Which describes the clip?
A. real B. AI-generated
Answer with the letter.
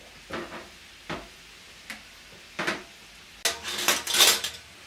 A